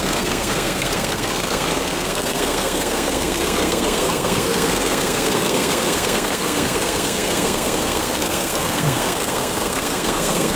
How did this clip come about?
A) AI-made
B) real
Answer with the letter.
A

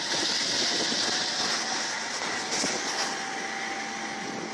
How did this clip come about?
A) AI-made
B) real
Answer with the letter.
B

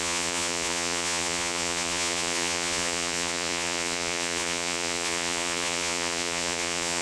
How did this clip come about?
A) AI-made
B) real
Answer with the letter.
A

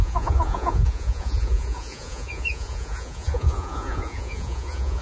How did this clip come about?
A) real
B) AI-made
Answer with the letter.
B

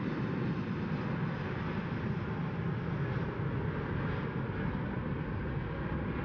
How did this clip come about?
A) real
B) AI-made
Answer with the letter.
A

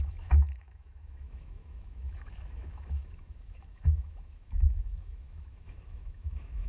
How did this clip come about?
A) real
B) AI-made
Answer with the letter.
B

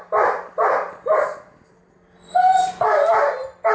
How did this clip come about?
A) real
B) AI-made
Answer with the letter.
A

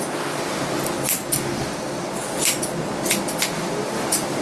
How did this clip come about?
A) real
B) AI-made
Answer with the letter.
A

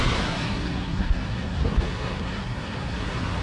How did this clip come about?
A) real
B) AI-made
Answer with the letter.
B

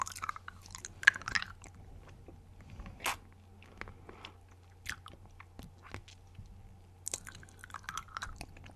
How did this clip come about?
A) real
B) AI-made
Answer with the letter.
A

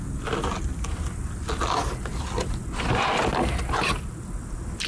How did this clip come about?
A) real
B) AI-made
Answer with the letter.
A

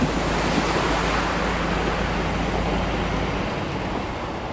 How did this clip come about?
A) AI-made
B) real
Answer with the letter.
B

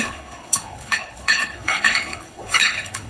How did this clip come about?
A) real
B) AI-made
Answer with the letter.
B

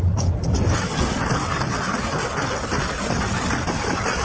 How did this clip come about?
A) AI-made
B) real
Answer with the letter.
B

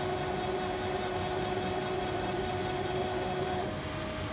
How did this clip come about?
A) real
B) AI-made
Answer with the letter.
A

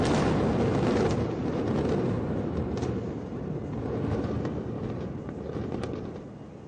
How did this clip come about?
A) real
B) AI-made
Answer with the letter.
A